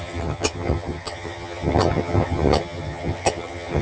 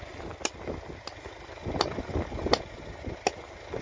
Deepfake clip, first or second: first